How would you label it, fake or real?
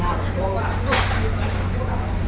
real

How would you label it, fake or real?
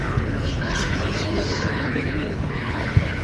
fake